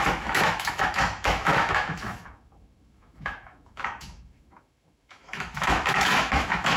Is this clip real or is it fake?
fake